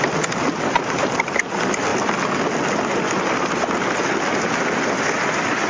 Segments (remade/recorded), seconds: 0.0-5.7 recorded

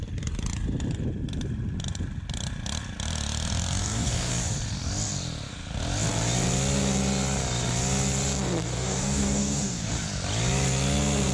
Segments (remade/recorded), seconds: 0.0-3.8 recorded; 3.8-4.3 remade; 4.3-8.7 recorded; 8.7-9.9 remade; 9.9-11.3 recorded

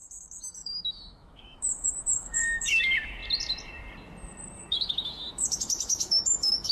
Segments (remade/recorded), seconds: 0.0-3.2 remade; 3.2-4.6 recorded; 4.6-6.7 remade